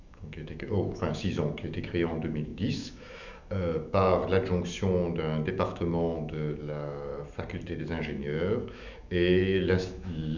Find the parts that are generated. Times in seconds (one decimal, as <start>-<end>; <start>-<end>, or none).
0.0-4.2; 5.5-7.1; 7.7-10.4